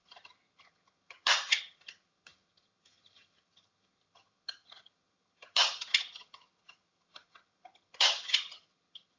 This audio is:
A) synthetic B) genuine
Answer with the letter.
A